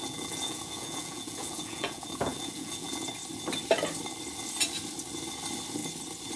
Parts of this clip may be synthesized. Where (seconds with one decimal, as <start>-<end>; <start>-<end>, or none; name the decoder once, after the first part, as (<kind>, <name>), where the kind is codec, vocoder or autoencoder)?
0.0-3.1 (vocoder, Vocos)